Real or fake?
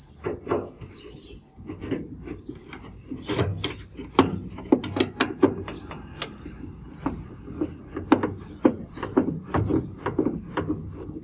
real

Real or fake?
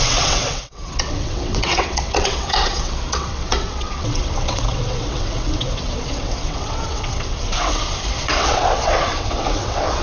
fake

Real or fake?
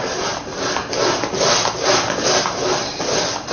real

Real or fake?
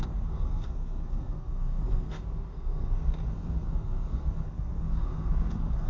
fake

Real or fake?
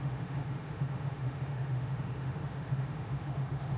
fake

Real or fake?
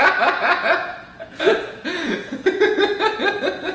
fake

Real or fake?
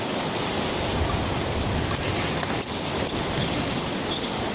real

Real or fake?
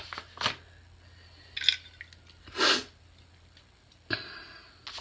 real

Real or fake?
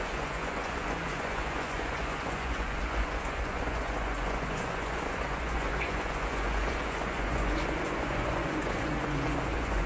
fake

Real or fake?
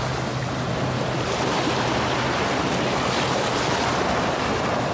real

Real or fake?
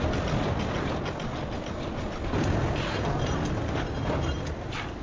real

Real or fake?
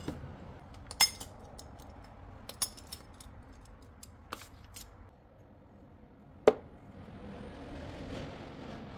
real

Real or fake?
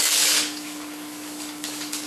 fake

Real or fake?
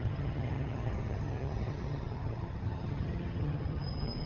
fake